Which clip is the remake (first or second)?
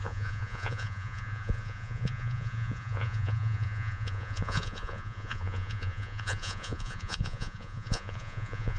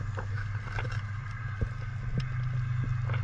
first